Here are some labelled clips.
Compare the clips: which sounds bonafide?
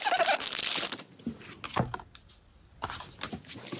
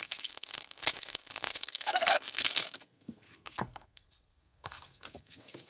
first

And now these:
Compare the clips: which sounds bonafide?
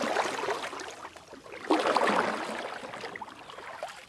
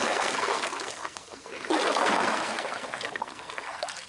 first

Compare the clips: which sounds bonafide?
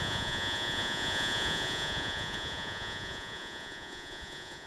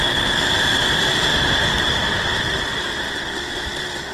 second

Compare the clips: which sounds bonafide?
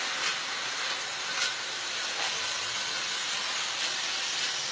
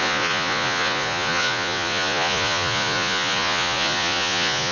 first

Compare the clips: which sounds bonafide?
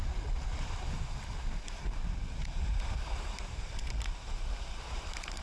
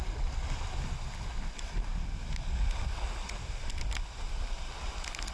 second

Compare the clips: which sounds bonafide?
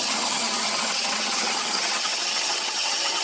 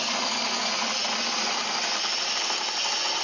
second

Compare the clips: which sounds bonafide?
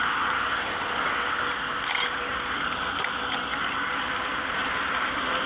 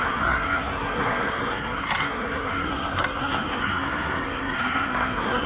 first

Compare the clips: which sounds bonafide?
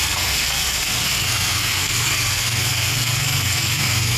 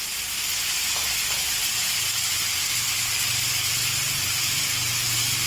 second